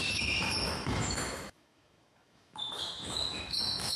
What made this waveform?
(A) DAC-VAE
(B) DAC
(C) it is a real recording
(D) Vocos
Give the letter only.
A